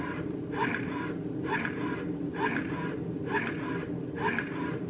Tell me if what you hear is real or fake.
real